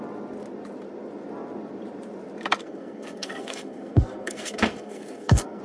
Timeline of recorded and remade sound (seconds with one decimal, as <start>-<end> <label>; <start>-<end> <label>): 0.0-2.6 recorded; 2.6-5.6 remade